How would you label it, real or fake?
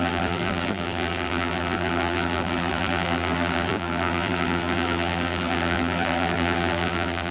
fake